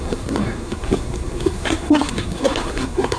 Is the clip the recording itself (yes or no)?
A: no